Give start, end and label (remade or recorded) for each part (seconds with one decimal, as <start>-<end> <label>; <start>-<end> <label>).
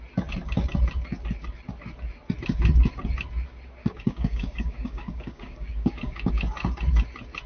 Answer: 0.0-3.8 recorded; 3.8-6.3 remade; 6.3-7.5 recorded